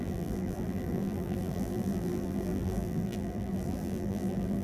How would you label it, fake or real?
fake